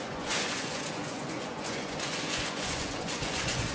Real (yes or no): no